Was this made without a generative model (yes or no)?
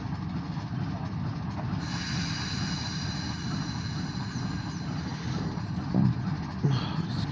yes